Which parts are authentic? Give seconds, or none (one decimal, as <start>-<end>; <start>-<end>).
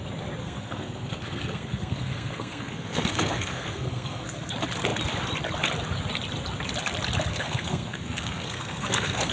0.0-0.4; 4.5-7.3